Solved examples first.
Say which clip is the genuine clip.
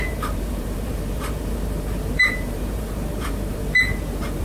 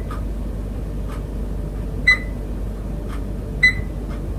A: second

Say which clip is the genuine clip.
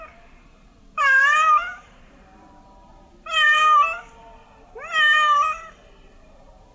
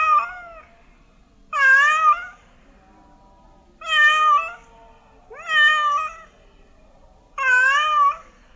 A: second